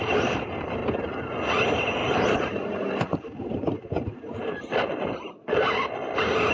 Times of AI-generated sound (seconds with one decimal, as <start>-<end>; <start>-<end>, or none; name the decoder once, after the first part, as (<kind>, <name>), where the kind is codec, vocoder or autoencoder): 0.8-1.3 (vocoder, BigVGAN v2); 2.0-5.3